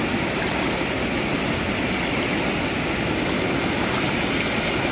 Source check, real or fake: real